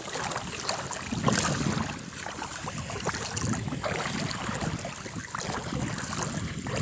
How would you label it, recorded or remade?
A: recorded